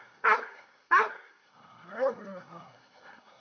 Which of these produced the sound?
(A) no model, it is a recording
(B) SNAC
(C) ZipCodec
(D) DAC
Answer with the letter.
B